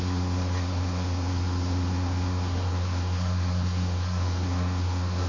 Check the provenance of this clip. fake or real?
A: fake